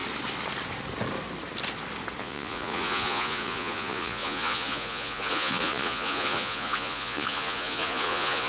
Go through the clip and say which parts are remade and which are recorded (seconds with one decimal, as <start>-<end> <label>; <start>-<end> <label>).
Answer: 0.0-2.2 recorded; 2.2-8.5 remade